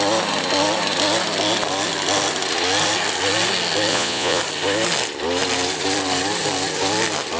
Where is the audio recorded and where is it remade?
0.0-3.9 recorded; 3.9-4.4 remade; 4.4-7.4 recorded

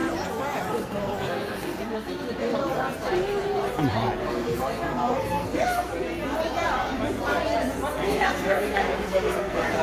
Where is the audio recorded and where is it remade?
0.0-0.7 recorded; 0.7-2.6 remade; 2.6-4.2 recorded; 4.2-5.9 remade; 5.9-7.9 recorded; 7.9-9.8 remade

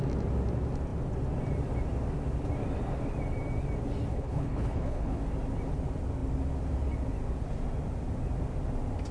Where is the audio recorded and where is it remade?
0.0-4.1 recorded; 4.1-5.2 remade; 5.2-9.1 recorded

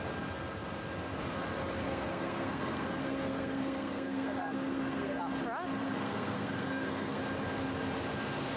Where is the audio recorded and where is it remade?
0.0-1.8 recorded; 1.8-5.2 remade; 5.2-5.8 recorded; 5.8-7.2 remade; 7.2-8.6 recorded